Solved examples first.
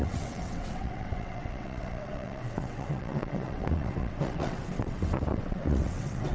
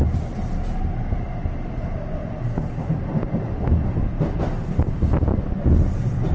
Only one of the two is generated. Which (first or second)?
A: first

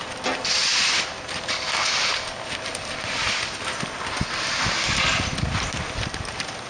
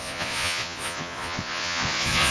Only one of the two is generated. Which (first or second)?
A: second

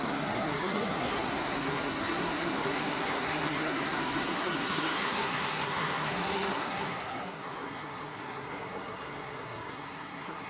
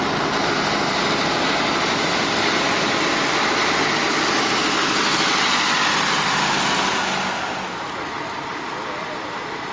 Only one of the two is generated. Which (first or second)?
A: first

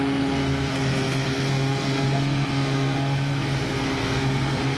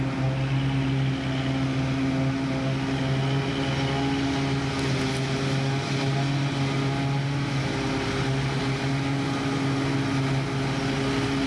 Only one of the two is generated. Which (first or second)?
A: first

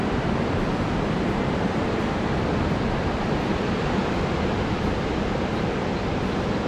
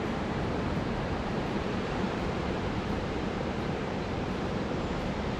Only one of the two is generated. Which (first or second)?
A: second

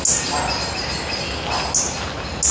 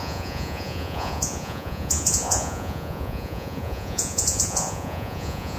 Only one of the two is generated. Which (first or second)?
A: second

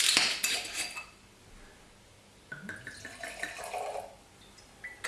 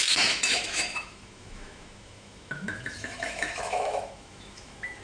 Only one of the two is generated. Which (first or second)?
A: second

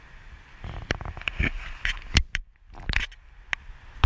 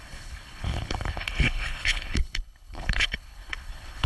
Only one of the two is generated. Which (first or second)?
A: second